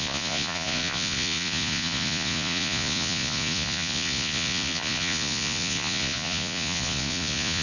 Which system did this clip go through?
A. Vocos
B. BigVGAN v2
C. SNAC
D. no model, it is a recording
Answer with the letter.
A